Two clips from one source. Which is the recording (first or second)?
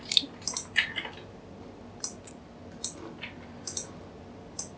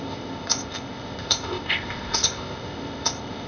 first